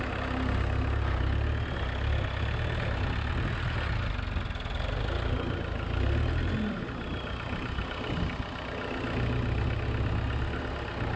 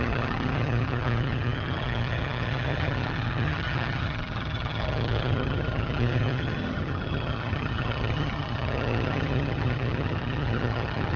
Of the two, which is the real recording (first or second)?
first